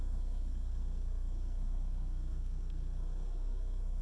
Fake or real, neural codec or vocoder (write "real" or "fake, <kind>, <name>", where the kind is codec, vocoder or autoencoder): fake, codec, SNAC